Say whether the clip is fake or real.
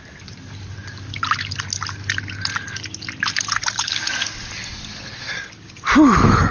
real